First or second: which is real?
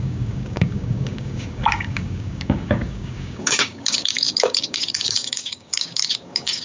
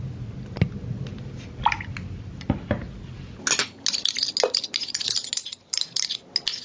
second